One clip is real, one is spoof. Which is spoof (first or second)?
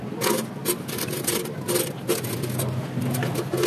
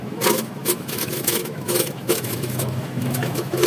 second